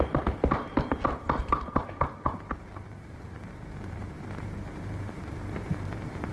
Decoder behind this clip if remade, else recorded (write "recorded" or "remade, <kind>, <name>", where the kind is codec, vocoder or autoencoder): remade, vocoder, BigVGAN v2